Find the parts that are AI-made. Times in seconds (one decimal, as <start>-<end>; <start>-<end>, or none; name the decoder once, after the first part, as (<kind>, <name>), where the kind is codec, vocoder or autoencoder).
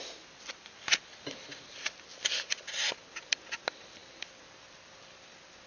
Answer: none